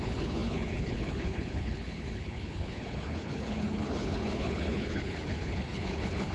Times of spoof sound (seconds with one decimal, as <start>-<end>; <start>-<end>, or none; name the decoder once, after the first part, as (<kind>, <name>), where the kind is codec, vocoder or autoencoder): 0.0-6.3 (codec, HILCodec)